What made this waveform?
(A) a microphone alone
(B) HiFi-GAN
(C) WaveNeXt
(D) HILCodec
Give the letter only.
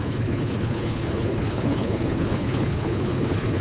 D